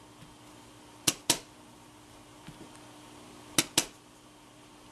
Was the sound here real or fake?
real